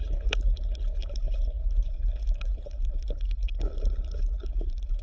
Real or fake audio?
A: fake